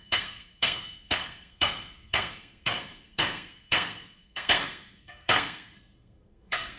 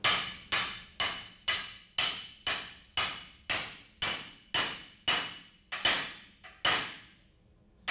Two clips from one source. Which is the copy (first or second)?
first